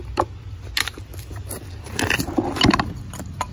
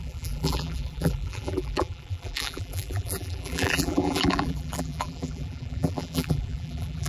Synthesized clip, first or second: second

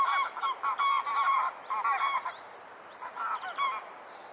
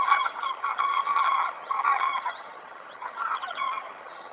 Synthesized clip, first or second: second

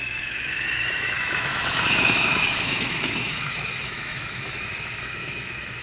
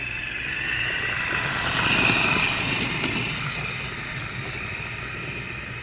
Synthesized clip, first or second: first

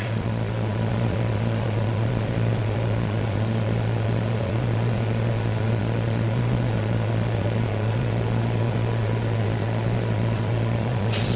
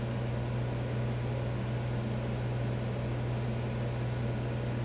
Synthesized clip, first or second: first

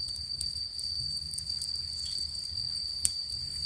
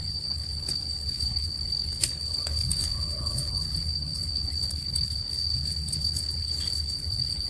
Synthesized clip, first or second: second